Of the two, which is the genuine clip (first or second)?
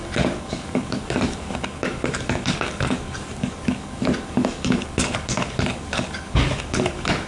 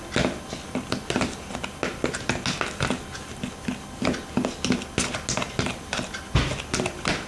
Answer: second